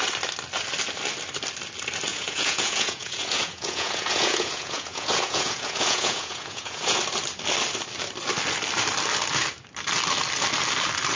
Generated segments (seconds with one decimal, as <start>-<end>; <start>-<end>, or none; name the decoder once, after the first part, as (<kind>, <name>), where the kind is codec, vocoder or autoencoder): 2.1-7.0 (vocoder, Vocos)